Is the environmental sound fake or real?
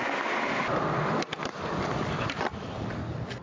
real